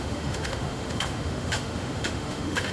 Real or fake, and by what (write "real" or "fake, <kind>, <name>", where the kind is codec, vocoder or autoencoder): fake, autoencoder, DAC-VAE